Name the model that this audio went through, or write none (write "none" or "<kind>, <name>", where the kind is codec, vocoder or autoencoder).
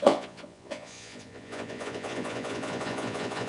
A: vocoder, Vocos